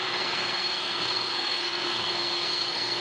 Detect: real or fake fake